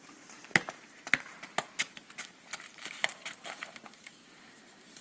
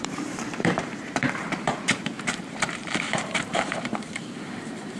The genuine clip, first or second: first